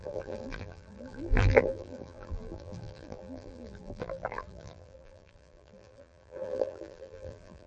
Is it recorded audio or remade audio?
remade